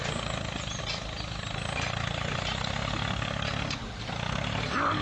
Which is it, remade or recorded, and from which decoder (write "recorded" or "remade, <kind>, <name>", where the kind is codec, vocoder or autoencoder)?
recorded